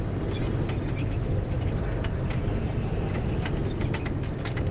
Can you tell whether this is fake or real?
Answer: real